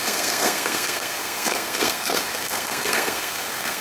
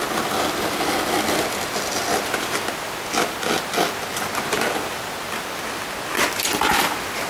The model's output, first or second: first